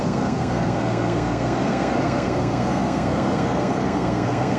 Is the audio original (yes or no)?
no